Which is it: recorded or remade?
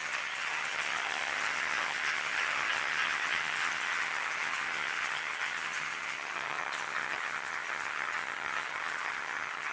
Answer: remade